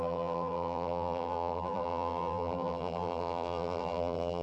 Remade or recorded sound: remade